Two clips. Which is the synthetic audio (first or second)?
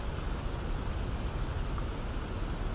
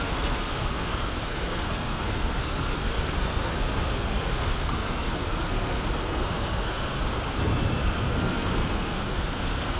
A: second